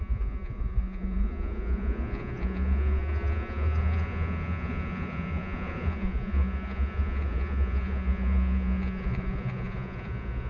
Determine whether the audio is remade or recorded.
remade